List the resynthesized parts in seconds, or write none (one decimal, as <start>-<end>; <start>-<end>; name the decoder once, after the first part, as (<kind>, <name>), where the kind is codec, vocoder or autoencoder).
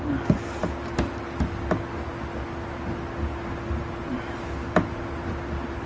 none